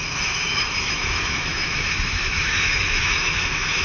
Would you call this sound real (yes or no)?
no